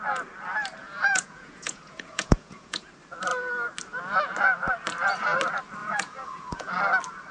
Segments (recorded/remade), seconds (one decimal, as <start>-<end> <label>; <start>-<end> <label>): 0.0-0.8 recorded; 0.8-2.9 remade; 2.9-5.8 recorded; 5.8-6.7 remade; 6.7-7.3 recorded